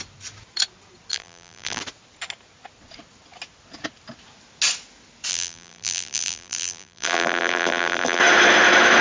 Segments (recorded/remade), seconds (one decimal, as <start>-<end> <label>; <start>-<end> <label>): 0.0-1.1 recorded; 1.1-1.8 remade; 1.8-5.3 recorded; 5.3-8.2 remade; 8.2-9.0 recorded